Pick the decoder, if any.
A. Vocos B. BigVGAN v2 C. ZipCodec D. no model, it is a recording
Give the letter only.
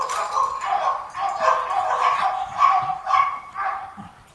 D